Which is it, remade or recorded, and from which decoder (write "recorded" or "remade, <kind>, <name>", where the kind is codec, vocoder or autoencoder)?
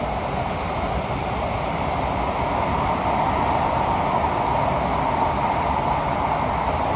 recorded